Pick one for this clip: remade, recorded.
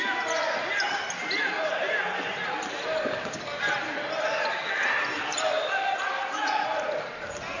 recorded